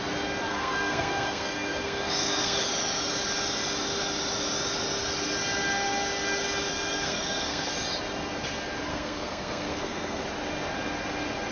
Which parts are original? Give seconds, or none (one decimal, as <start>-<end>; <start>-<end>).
0.0-0.5; 2.6-6.7; 7.7-8.9; 10.2-11.5